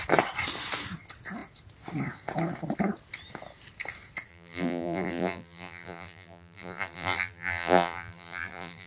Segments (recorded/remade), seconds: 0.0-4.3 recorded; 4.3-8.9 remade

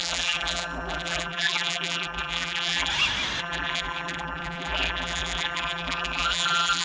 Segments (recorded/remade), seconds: 0.0-2.9 remade; 2.9-3.4 recorded; 3.4-6.8 remade

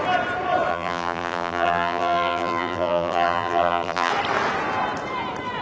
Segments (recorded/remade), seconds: 0.0-0.7 recorded; 0.7-4.1 remade; 4.1-5.6 recorded

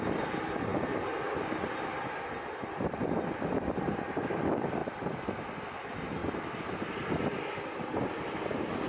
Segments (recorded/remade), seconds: 0.0-0.7 remade; 0.7-4.1 recorded; 4.1-4.8 remade; 4.8-5.8 recorded; 5.8-6.2 remade; 6.2-7.1 recorded; 7.1-8.9 remade

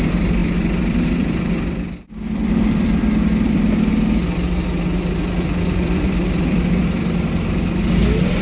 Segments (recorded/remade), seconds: 0.0-3.9 remade; 3.9-5.6 recorded; 5.6-8.4 remade

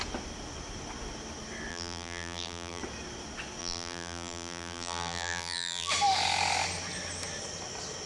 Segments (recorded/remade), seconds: 0.0-1.7 recorded; 1.7-2.8 remade; 2.8-3.6 recorded; 3.6-5.9 remade; 5.9-8.1 recorded

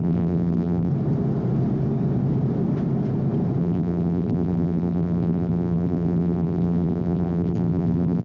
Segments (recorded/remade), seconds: 0.0-0.9 remade; 0.9-3.6 recorded; 3.6-8.2 remade

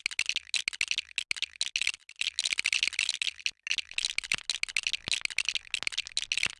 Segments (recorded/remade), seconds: 0.0-6.6 recorded